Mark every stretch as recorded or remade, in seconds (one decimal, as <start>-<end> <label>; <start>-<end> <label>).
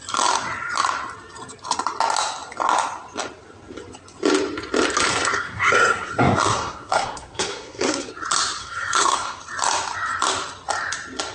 0.0-5.1 recorded; 5.1-8.1 remade; 8.1-8.6 recorded; 8.6-9.4 remade; 9.4-11.3 recorded